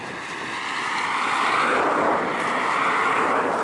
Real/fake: real